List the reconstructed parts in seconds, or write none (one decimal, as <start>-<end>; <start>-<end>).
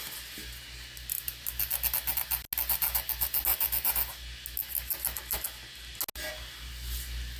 none